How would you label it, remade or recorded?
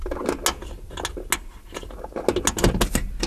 recorded